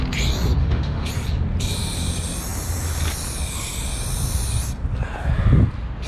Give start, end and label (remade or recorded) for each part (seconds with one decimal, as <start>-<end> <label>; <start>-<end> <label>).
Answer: 0.0-0.6 recorded; 0.6-1.1 remade; 1.1-6.1 recorded